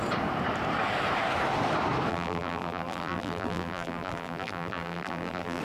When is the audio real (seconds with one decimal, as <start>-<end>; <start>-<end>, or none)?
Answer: 0.0-2.1